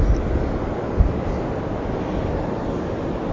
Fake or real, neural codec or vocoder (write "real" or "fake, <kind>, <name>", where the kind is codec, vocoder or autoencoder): real